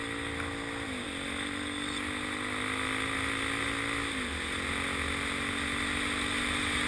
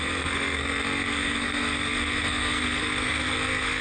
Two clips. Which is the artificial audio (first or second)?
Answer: second